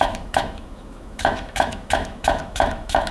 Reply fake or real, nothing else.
fake